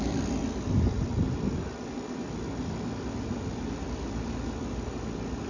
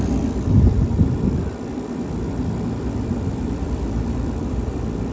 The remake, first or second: second